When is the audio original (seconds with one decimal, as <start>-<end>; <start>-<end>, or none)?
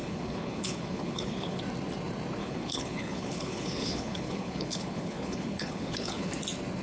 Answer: 1.6-2.4; 6.3-6.8